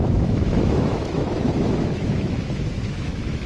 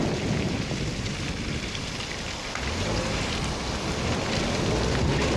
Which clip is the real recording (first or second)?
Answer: second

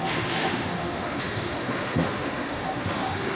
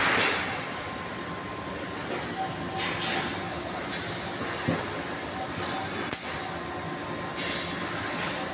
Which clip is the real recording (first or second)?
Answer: second